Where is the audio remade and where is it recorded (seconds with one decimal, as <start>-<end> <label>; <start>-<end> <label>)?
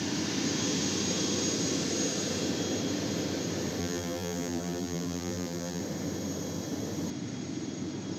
0.0-3.8 recorded; 3.8-5.8 remade; 5.8-8.2 recorded